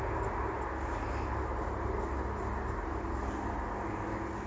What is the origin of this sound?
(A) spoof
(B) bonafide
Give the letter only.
B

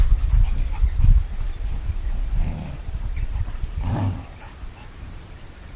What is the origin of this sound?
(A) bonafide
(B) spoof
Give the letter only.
B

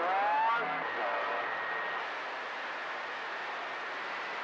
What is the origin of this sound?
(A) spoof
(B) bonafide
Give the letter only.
B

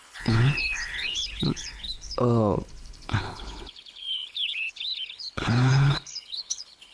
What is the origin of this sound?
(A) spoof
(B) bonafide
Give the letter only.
A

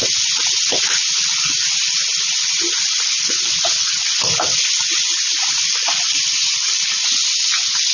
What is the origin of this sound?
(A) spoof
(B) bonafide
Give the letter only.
B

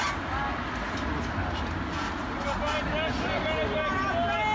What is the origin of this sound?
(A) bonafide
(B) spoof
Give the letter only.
A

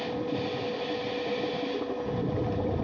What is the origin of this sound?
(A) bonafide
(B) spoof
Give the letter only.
A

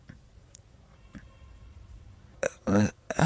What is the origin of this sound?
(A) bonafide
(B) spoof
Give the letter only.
B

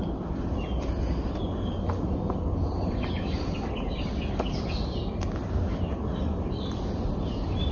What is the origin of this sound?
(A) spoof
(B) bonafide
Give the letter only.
B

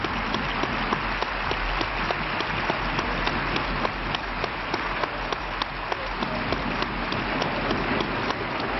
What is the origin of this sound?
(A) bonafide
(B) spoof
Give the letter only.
A